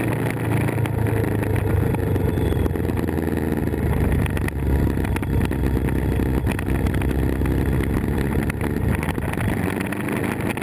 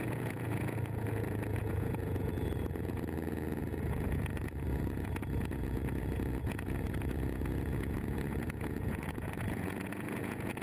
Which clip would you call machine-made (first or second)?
second